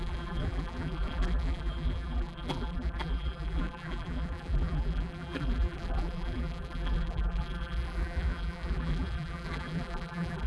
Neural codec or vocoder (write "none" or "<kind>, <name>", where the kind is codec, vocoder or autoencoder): vocoder, BigVGAN v2